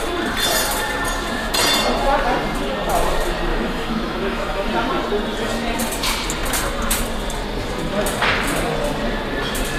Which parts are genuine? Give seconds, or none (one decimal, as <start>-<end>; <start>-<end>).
0.0-3.5; 4.7-9.8